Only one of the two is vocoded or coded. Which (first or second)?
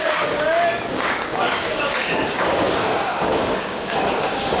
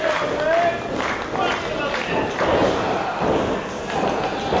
first